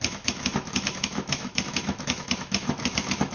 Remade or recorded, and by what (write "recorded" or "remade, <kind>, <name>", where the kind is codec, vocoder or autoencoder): remade, autoencoder, DAC-VAE